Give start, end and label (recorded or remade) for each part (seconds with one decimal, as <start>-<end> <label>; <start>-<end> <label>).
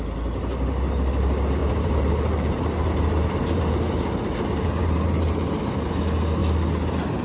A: 0.0-1.6 recorded; 1.6-5.9 remade; 5.9-7.2 recorded